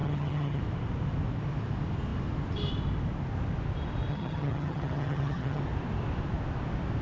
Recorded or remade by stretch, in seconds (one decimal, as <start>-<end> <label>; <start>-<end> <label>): 0.0-0.6 remade; 0.6-4.1 recorded; 4.1-5.6 remade; 5.6-7.0 recorded